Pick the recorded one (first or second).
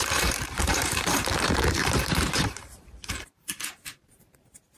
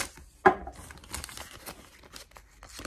second